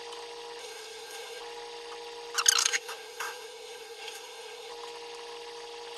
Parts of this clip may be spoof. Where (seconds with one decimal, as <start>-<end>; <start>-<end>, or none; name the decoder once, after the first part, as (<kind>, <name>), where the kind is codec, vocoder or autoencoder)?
0.6-1.4 (codec, SNAC); 2.6-4.7